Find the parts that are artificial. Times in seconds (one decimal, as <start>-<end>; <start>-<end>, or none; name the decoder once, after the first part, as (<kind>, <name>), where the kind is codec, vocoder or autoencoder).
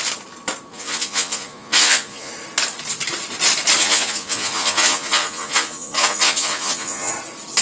0.7-2.3 (vocoder, Vocos); 3.8-7.1